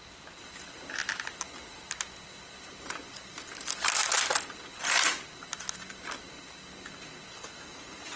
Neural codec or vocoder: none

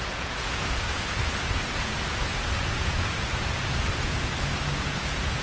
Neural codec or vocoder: vocoder, Vocos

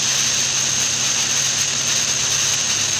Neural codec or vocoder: none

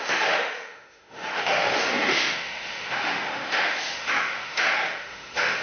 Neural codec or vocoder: autoencoder, DAC-VAE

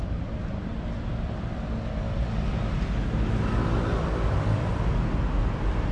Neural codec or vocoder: vocoder, BigVGAN v2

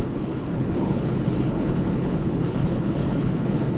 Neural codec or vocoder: codec, HILCodec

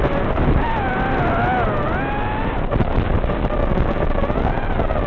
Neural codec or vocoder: none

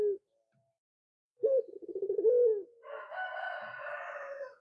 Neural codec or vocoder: none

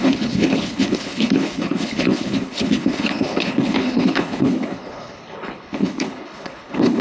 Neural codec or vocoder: codec, HILCodec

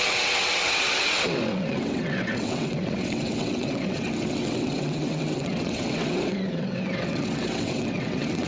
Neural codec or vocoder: vocoder, WaveNeXt